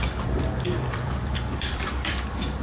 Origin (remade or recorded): remade